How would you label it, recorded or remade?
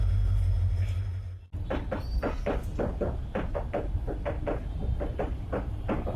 recorded